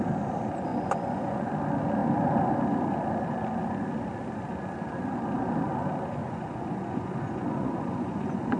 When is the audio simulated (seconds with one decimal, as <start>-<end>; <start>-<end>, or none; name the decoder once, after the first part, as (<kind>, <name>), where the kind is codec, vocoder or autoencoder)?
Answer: 0.7-1.5 (vocoder, Vocos); 6.2-8.6

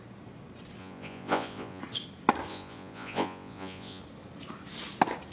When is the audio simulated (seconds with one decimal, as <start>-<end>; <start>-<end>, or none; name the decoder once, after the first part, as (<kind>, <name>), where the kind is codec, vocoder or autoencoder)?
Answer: 0.8-1.8 (vocoder, Vocos); 2.5-4.0